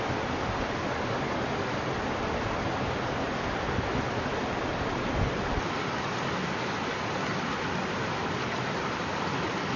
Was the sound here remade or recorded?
recorded